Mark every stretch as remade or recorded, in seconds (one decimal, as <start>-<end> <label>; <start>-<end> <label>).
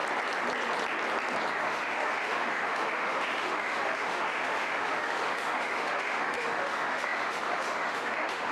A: 0.0-1.5 recorded; 1.5-8.5 remade